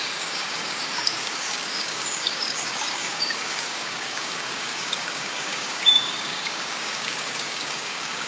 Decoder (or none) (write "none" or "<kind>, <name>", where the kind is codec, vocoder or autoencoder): codec, DAC